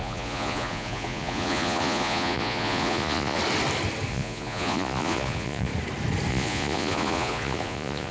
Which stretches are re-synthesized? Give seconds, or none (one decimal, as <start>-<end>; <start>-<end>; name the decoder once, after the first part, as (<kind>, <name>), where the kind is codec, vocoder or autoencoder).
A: 0.0-3.4 (vocoder, Vocos); 4.1-5.7; 6.3-8.1